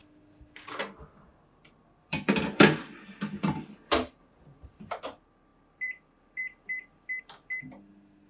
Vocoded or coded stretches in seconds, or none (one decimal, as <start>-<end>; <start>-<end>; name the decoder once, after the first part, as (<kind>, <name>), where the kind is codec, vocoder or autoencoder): 1.3-5.0 (vocoder, BigVGAN v2); 5.5-7.2